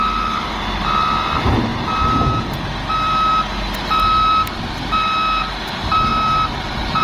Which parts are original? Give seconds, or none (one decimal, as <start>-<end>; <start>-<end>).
0.0-7.0